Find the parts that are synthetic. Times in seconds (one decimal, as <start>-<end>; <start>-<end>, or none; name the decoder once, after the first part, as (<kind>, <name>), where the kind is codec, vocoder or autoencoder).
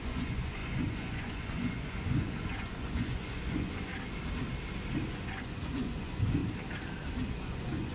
0.0-3.9 (vocoder, Vocos); 5.1-6.4; 7.3-7.9